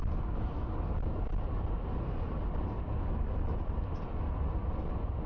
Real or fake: real